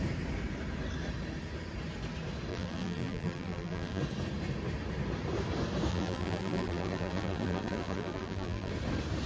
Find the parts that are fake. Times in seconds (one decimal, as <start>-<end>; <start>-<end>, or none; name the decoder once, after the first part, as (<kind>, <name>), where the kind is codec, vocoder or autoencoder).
2.5-4.0 (vocoder, BigVGAN v2); 5.9-8.7